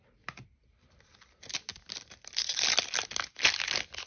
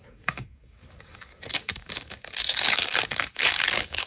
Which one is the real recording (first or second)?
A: first